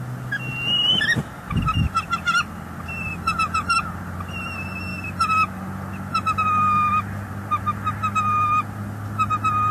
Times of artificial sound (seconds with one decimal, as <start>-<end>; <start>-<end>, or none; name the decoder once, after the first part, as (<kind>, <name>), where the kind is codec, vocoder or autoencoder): none